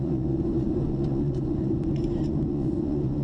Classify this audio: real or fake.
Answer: fake